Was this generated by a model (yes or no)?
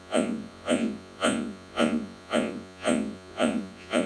yes